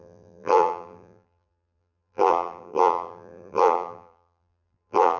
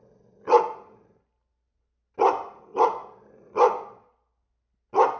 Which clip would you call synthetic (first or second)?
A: first